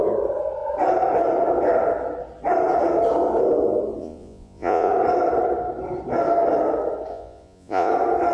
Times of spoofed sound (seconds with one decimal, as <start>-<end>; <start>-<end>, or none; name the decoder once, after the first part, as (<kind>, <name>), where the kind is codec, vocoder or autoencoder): 4.0-4.9 (vocoder, Vocos); 7.1-7.9